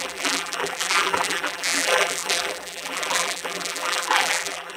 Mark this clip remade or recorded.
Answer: remade